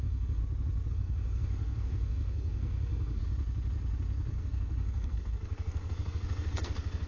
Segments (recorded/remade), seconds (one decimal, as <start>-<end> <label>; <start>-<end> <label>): 0.0-0.4 remade; 0.4-0.9 recorded; 0.9-3.2 remade; 3.2-4.3 recorded; 4.3-7.1 remade